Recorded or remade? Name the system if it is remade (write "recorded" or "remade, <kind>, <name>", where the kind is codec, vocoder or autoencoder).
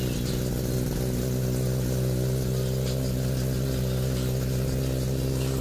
recorded